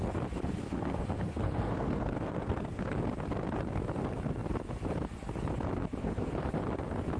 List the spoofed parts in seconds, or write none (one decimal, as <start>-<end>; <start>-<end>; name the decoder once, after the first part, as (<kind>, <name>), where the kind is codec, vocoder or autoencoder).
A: 0.6-2.8 (codec, SNAC); 6.0-6.6